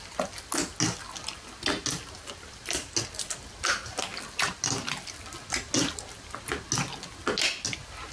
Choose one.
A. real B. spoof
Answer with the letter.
A